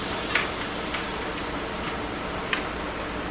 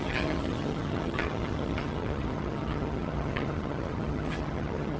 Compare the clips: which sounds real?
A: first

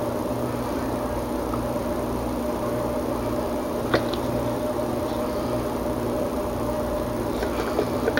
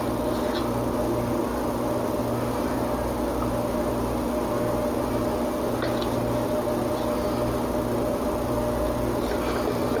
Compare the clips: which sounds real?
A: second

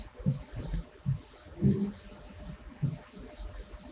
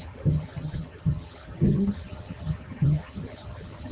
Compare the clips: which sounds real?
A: first